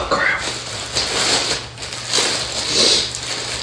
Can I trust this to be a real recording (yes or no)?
yes